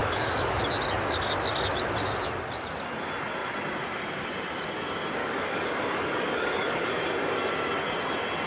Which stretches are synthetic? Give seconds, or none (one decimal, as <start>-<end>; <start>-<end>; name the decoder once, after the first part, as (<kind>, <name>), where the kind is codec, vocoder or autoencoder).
0.0-0.6 (codec, DAC); 5.2-6.9